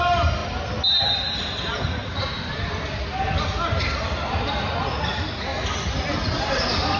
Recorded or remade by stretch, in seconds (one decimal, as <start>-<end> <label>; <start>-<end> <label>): 0.0-7.0 recorded